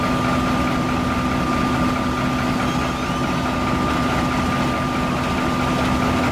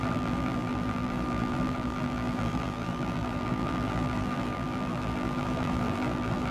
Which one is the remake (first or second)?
second